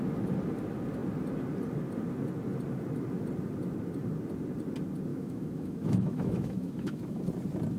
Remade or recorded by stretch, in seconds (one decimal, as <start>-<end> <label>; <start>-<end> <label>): 0.0-5.1 recorded; 5.1-7.2 remade; 7.2-7.8 recorded